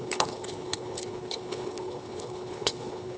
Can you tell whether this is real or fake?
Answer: fake